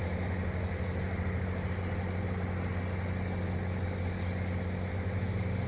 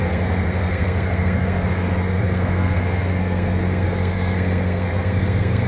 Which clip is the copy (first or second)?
second